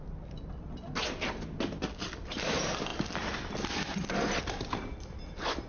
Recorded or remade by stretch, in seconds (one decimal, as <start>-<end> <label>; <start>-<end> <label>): 0.0-5.7 recorded